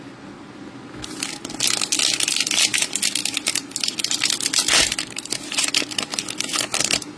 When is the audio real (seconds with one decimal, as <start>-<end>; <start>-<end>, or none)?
0.0-7.2